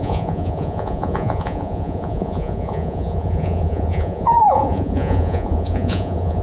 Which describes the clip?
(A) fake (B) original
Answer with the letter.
A